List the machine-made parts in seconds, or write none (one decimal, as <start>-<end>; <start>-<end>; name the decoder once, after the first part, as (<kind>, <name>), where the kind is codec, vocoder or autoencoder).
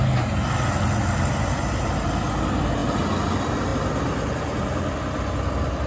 none